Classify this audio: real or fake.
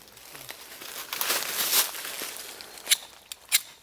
real